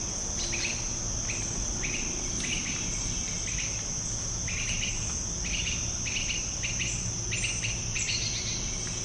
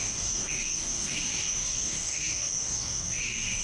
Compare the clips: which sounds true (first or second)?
first